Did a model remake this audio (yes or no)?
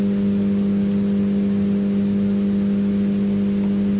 no